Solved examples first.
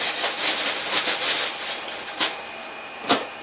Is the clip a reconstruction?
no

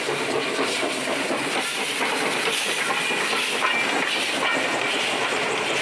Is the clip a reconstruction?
no